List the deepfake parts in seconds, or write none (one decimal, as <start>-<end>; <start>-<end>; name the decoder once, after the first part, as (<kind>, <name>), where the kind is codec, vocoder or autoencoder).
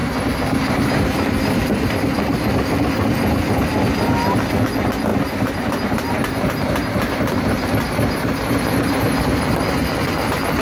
0.0-1.9 (vocoder, BigVGAN v2); 5.1-9.4